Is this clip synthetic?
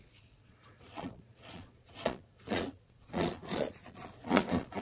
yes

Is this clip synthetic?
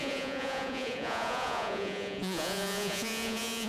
yes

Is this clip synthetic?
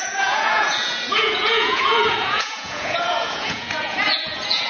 yes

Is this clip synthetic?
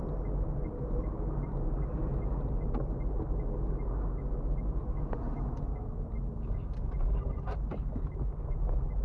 no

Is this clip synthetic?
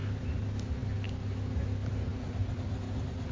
no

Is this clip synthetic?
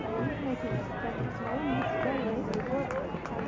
no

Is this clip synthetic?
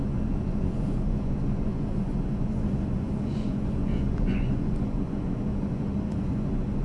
yes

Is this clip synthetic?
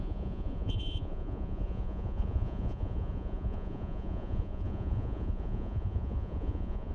yes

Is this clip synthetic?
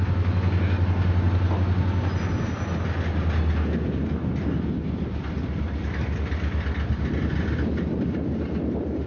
no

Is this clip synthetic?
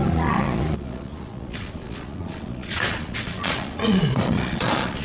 yes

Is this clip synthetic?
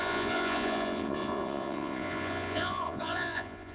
yes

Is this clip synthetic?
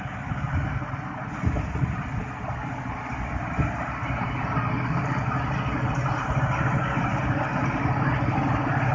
no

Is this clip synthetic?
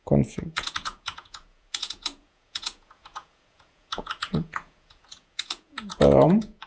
yes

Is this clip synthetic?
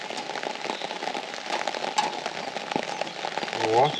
no